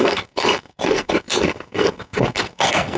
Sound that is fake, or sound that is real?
fake